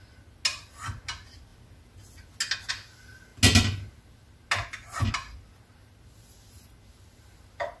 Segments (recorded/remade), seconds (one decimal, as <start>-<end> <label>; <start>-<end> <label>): 0.0-7.8 recorded